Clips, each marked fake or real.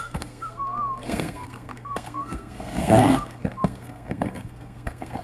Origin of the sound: fake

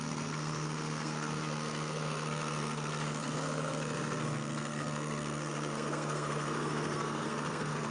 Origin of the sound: fake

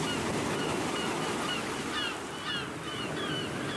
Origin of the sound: real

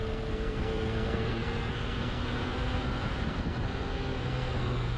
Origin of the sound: fake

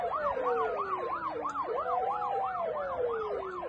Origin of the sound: real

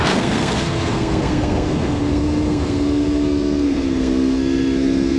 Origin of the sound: fake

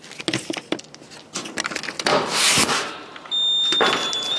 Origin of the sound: real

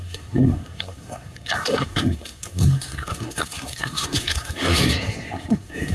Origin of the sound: fake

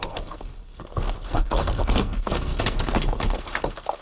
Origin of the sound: fake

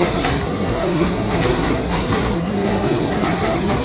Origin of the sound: fake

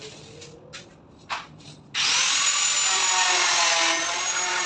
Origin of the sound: real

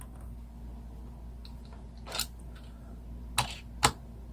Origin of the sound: real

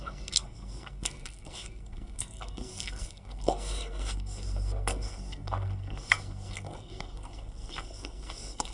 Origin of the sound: fake